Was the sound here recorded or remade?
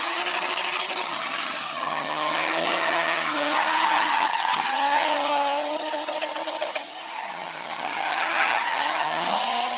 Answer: remade